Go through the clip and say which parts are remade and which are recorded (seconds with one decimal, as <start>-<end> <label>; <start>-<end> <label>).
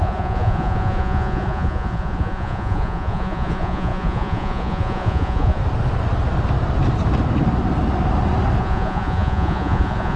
0.0-5.6 remade; 5.6-8.6 recorded; 8.6-10.2 remade